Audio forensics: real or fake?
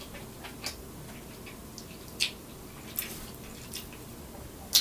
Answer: real